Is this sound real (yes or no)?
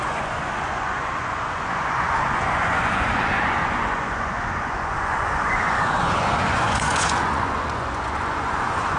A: no